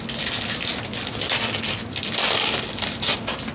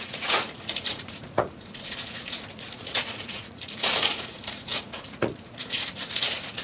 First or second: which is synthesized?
second